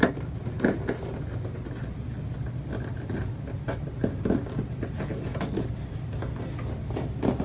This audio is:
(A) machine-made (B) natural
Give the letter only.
B